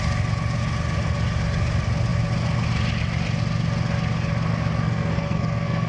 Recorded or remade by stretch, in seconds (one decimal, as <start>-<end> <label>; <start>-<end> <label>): 0.0-4.5 recorded; 4.5-5.9 remade